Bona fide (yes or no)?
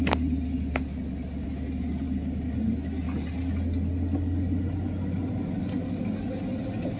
yes